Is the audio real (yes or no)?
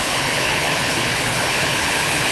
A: no